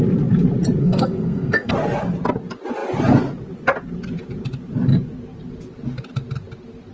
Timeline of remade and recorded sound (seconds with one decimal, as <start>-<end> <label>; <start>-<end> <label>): 0.0-0.8 recorded; 0.8-1.7 remade; 1.7-6.9 recorded